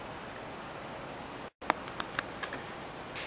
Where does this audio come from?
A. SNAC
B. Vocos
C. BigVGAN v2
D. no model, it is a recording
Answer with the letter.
D